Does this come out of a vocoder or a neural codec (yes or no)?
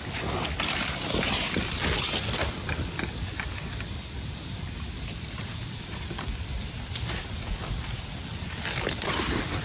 no